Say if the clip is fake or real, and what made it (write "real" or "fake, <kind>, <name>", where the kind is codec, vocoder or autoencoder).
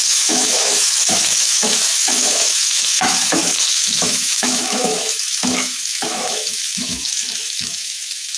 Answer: fake, autoencoder, DAC-VAE